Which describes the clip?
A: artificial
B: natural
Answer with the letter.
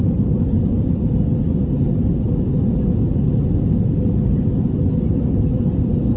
B